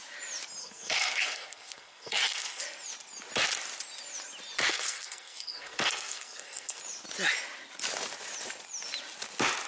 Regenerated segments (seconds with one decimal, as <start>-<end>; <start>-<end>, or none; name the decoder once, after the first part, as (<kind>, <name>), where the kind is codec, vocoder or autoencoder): 0.6-2.6 (codec, SNAC); 4.7-6.8

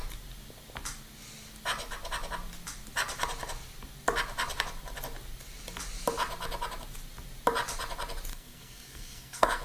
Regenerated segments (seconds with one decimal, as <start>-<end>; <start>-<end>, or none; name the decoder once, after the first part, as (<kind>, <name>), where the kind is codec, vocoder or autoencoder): 8.3-9.6 (codec, SNAC)

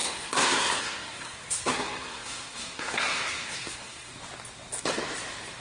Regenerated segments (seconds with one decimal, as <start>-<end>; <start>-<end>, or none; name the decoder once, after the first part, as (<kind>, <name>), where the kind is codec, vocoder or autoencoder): 0.0-4.1 (codec, SNAC)

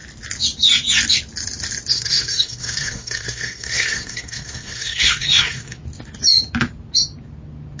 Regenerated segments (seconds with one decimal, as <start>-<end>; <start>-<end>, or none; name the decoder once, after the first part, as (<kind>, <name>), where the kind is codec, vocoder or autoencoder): 1.9-5.8 (codec, SNAC)